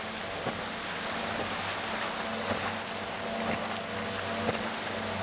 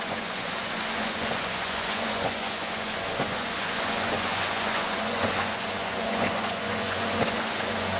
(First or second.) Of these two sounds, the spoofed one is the second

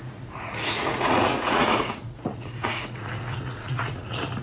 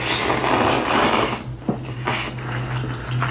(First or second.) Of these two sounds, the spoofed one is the first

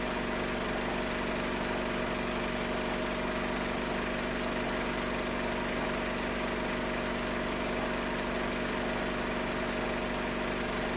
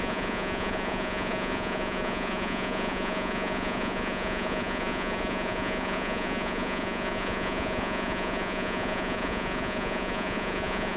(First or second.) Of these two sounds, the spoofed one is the second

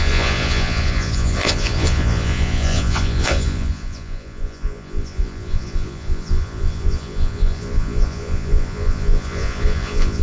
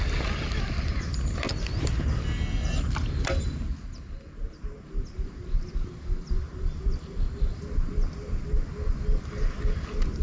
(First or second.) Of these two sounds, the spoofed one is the first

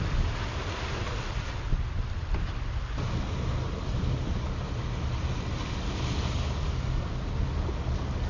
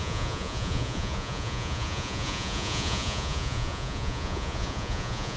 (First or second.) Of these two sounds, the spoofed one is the second